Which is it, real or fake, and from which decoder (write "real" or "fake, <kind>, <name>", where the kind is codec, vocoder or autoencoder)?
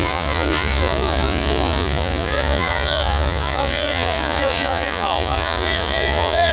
fake, vocoder, Vocos